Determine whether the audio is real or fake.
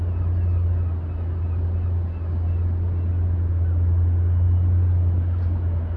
real